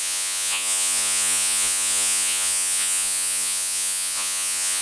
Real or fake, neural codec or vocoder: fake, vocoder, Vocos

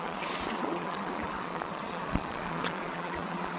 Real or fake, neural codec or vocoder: fake, vocoder, Vocos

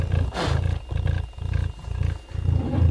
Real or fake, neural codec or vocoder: real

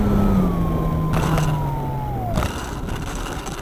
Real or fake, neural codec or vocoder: real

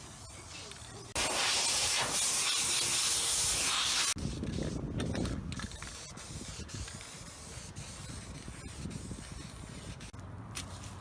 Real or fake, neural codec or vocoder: real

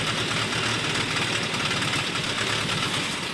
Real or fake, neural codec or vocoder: real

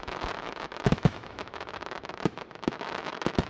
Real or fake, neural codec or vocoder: fake, autoencoder, DAC-VAE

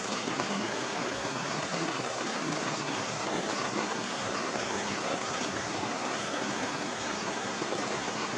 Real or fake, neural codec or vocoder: fake, codec, SNAC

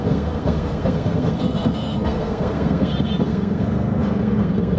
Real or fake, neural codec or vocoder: fake, codec, SNAC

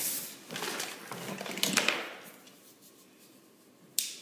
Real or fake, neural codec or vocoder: real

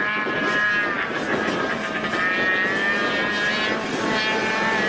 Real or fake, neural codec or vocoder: real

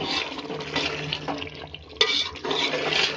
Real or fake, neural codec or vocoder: real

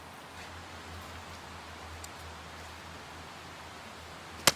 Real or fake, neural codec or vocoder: real